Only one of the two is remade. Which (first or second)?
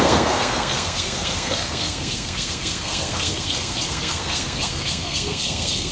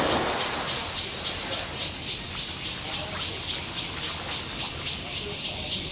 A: first